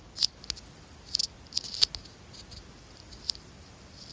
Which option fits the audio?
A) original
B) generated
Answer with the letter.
A